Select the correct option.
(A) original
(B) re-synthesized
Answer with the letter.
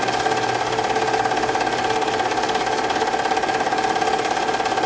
A